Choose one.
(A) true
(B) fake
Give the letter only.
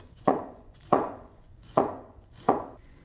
B